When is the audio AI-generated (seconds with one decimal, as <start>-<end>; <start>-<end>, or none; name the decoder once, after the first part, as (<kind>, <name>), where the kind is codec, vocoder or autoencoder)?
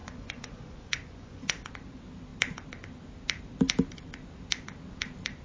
0.0-1.7 (vocoder, Vocos)